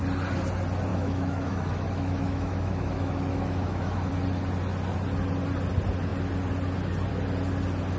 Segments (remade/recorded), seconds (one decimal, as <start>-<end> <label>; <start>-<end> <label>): 0.0-0.9 recorded; 0.9-4.1 remade; 4.1-8.0 recorded